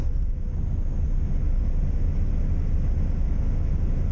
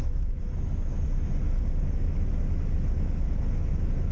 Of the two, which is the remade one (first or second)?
second